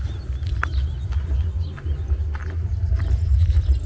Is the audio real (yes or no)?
yes